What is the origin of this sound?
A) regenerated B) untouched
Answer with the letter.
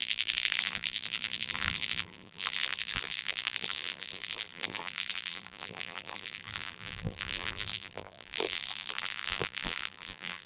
A